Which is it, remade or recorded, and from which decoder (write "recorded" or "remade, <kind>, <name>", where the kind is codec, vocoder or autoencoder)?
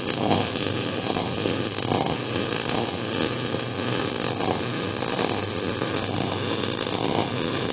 recorded